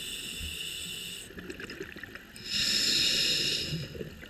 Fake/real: real